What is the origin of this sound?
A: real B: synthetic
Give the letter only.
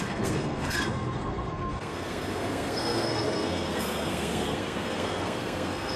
B